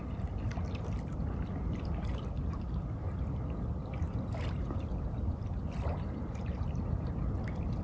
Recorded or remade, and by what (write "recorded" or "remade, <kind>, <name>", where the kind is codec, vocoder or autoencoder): recorded